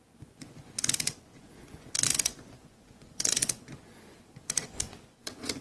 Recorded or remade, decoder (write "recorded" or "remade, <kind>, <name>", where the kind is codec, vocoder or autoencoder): remade, vocoder, Vocos